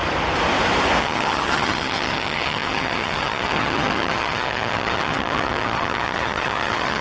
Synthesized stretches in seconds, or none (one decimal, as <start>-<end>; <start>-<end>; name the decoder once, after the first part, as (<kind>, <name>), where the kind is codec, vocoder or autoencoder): 1.0-7.0 (vocoder, HiFi-GAN)